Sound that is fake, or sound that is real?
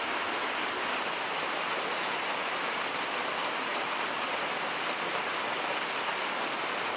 real